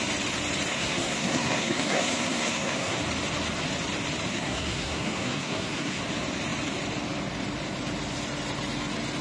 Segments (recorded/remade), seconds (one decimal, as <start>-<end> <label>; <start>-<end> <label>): 0.0-0.7 recorded; 0.7-3.0 remade; 3.0-4.3 recorded; 4.3-6.0 remade; 6.0-9.2 recorded